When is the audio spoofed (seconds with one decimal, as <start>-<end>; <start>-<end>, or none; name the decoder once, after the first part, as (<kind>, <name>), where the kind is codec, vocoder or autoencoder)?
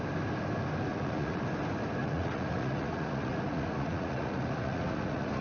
0.9-1.4 (vocoder, Vocos); 2.0-5.4